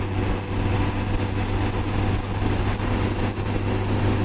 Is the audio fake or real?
real